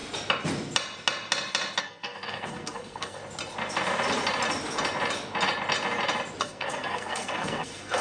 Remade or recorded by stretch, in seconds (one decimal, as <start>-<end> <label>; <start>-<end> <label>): 0.0-1.8 recorded; 1.8-3.2 remade; 3.2-6.4 recorded; 6.4-8.0 remade